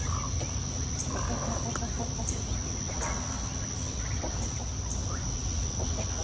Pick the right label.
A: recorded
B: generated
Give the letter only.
A